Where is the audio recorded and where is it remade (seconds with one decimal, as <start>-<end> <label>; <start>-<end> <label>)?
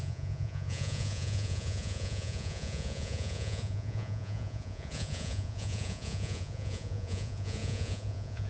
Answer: 0.0-8.5 remade